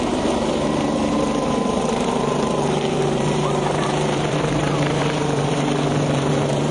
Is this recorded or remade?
remade